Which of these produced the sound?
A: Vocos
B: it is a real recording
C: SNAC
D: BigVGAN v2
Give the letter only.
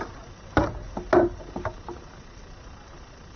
B